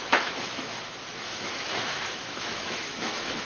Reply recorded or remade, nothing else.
remade